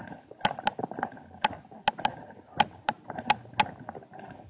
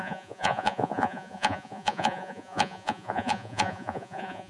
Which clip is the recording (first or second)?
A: first